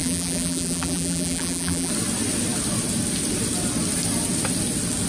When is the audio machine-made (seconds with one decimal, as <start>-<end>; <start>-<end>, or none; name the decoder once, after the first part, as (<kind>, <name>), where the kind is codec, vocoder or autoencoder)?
0.0-1.9 (vocoder, BigVGAN v2)